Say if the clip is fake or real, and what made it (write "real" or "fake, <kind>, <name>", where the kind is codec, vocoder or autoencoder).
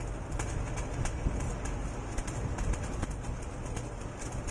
real